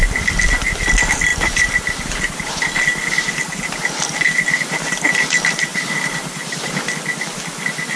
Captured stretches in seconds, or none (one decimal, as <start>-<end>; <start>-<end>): 0.0-1.3; 2.5-5.7; 6.7-8.0